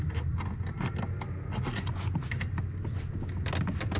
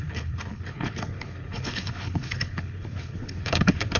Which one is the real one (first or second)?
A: first